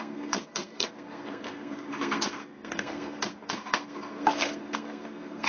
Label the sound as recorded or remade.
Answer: remade